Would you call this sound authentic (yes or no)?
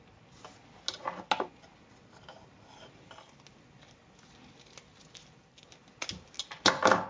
yes